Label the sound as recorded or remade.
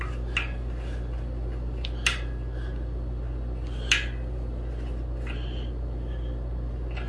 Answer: recorded